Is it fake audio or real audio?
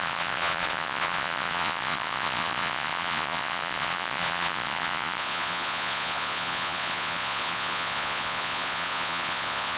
fake